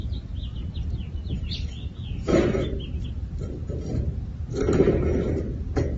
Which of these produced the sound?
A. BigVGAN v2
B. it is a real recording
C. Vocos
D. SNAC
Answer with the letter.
B